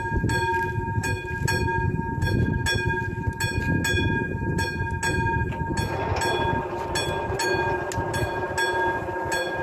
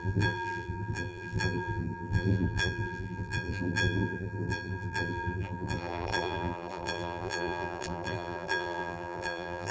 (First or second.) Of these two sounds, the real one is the first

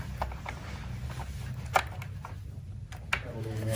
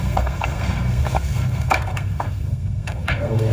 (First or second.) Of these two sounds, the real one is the first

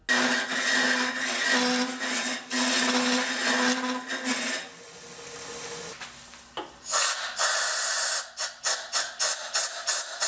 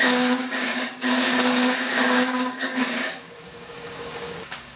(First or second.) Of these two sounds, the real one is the first